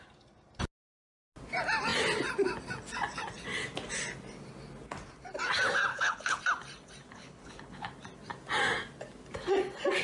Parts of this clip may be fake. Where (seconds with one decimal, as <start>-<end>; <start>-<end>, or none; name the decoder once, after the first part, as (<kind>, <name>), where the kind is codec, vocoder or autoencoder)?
5.9-6.4 (codec, HILCodec); 7.1-7.9